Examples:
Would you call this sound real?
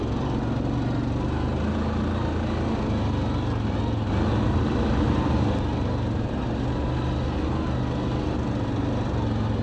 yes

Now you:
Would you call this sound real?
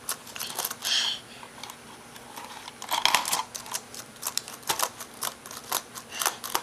yes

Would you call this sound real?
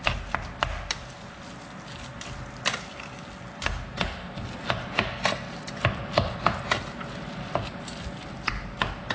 yes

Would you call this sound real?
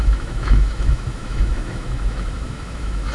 no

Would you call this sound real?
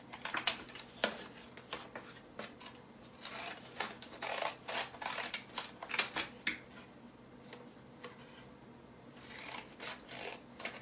yes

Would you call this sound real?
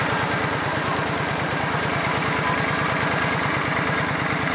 yes